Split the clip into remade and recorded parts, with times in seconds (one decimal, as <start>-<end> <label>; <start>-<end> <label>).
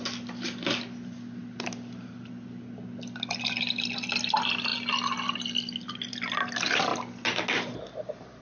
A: 0.0-8.4 recorded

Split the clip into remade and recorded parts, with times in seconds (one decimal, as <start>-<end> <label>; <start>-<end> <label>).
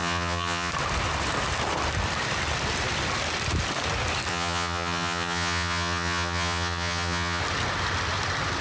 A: 0.0-0.7 remade; 0.7-4.3 recorded; 4.3-7.4 remade; 7.4-8.6 recorded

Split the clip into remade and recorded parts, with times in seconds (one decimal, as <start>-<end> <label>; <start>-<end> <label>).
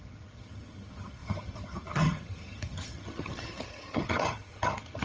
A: 0.0-5.0 remade